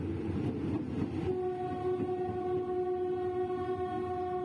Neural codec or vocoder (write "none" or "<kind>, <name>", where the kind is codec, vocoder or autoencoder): none